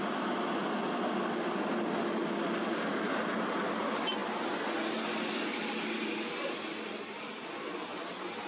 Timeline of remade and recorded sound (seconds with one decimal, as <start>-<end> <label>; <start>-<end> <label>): 0.0-8.5 recorded